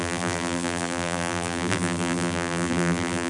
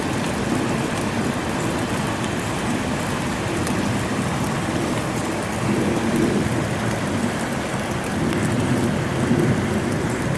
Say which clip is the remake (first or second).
first